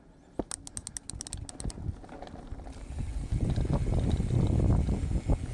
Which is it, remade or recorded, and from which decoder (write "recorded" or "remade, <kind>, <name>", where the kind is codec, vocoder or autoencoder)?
recorded